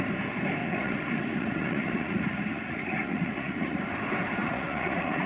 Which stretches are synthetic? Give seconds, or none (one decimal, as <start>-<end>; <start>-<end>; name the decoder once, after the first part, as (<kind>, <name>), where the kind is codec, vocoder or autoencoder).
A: 0.6-3.8 (vocoder, Vocos); 4.4-5.3